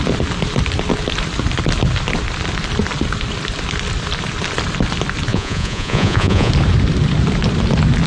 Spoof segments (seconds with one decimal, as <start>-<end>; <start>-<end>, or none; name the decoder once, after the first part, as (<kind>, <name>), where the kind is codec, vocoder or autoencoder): 5.3-6.5 (vocoder, Vocos)